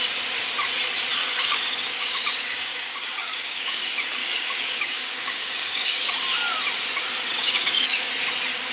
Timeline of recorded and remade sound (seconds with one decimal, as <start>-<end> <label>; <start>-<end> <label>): 0.0-1.2 recorded; 1.2-3.8 remade; 3.8-4.2 recorded; 4.2-6.1 remade; 6.1-7.4 recorded; 7.4-8.1 remade; 8.1-8.7 recorded